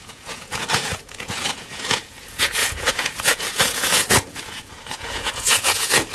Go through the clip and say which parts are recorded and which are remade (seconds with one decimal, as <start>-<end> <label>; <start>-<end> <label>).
0.0-6.1 remade